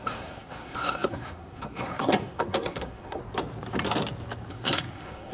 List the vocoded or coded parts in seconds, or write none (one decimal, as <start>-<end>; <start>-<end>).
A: 0.0-3.2; 4.5-5.3

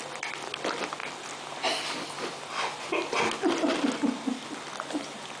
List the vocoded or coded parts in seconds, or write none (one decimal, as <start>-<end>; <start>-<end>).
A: none

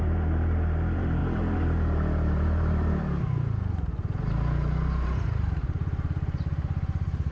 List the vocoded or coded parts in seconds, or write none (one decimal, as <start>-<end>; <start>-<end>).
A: 0.0-7.3

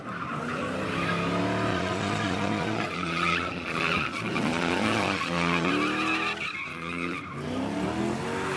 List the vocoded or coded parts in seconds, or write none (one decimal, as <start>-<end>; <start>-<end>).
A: 1.7-5.7; 6.7-7.2

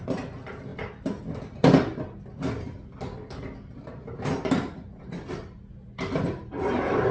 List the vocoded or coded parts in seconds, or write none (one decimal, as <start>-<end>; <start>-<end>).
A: none

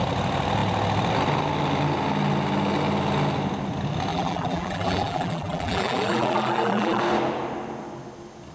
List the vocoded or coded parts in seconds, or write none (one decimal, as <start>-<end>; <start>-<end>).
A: 4.1-7.0